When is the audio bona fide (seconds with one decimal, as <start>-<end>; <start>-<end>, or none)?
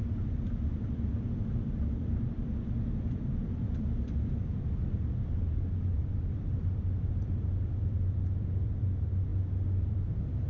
9.3-9.9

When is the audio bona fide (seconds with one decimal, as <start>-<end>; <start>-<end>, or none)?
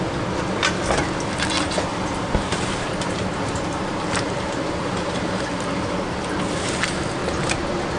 0.0-1.9; 6.4-7.2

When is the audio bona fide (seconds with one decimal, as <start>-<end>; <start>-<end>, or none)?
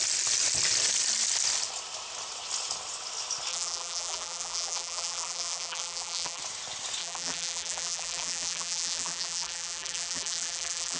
0.0-3.5; 6.4-7.0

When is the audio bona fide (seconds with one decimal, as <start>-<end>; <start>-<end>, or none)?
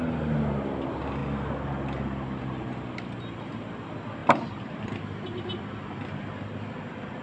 0.0-4.2; 5.7-7.2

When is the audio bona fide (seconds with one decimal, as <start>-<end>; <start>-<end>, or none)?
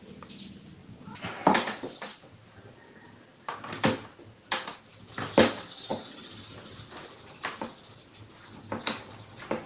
0.0-9.7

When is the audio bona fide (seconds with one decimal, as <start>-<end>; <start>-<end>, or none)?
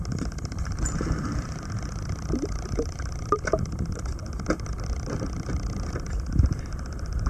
4.2-6.3